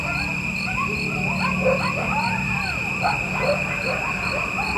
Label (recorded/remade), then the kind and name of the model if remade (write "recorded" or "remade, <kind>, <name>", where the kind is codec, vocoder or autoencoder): recorded